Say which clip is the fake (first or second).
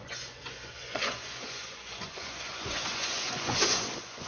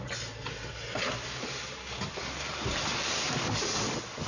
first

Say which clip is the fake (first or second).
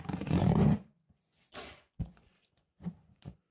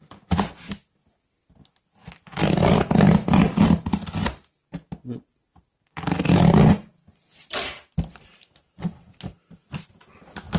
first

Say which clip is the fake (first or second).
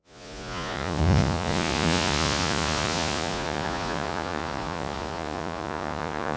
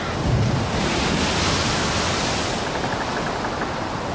first